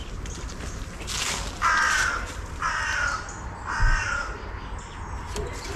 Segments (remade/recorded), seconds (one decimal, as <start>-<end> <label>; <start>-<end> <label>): 0.0-5.8 recorded